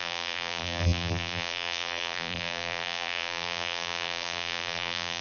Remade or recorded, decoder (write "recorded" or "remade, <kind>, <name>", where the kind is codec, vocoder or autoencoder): remade, vocoder, BigVGAN v2